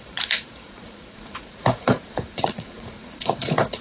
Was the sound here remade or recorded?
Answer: remade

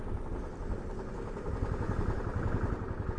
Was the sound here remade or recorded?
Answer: recorded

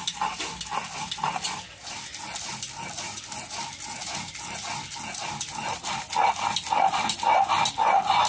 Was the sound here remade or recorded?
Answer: recorded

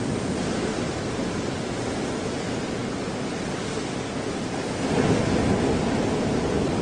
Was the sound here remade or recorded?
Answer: recorded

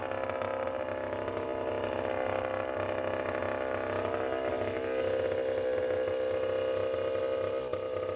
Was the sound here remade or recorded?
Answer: recorded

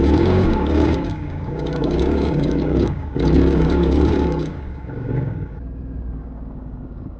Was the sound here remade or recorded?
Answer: remade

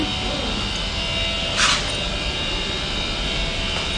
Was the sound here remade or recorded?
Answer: recorded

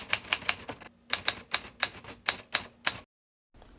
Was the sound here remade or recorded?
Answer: recorded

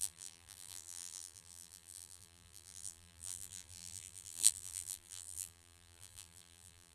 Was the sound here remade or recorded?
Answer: remade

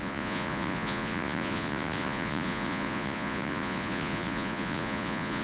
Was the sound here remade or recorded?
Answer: remade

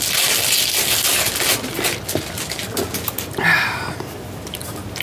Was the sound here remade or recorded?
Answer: recorded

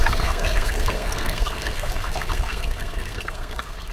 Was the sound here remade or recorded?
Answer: remade